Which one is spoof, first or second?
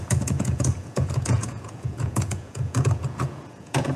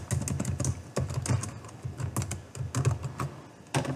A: first